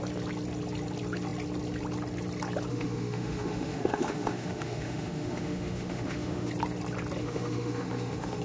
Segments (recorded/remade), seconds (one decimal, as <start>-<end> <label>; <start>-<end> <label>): 0.0-2.7 recorded; 2.7-6.5 remade; 6.5-7.2 recorded; 7.2-8.4 remade